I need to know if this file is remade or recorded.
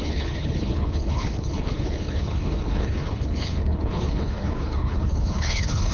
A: remade